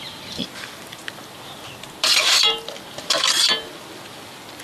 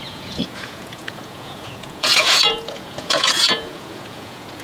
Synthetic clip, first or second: second